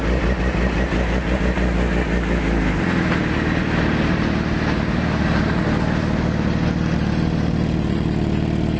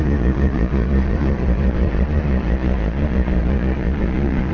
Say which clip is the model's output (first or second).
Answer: second